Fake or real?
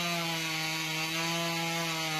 real